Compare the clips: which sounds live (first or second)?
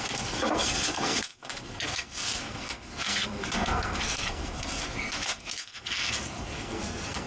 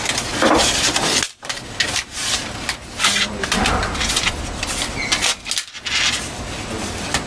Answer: second